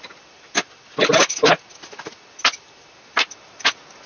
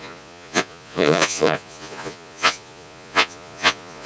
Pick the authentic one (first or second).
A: first